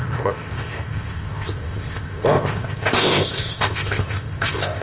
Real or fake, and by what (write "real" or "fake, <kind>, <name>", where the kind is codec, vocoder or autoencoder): fake, codec, ZipCodec